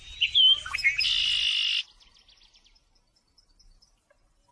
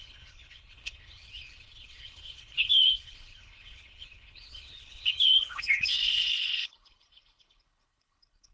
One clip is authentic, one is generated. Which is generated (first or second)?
second